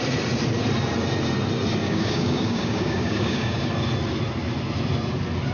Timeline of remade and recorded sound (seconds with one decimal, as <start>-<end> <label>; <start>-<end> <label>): 0.0-1.8 recorded; 1.8-3.7 remade; 3.7-5.5 recorded